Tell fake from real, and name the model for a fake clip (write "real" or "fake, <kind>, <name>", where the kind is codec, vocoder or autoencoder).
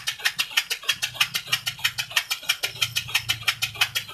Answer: real